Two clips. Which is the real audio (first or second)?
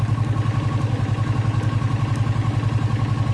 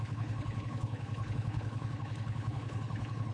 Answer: first